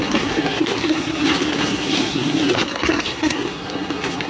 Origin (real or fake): fake